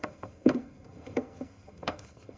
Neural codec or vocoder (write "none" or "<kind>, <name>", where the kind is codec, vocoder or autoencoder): codec, SNAC